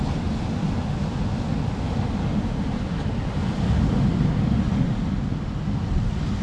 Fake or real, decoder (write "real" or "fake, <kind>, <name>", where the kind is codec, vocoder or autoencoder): real